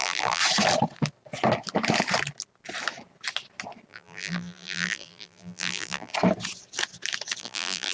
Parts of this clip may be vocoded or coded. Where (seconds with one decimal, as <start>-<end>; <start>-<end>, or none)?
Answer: 0.0-0.4; 3.9-6.1; 7.4-7.9